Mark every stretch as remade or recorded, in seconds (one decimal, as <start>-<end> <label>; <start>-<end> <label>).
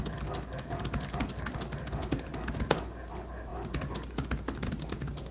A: 0.0-5.3 recorded